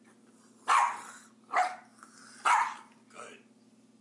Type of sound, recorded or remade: recorded